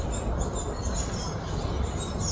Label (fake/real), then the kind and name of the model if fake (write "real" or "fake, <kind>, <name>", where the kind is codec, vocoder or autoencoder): real